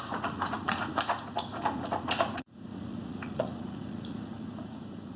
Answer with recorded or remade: remade